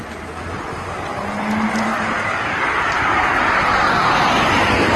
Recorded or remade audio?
recorded